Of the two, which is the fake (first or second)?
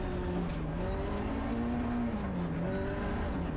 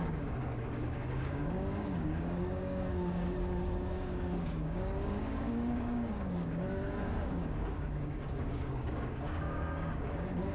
second